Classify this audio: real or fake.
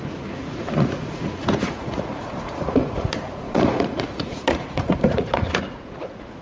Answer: fake